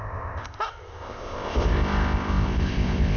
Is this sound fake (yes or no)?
yes